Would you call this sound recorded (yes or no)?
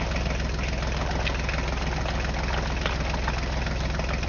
yes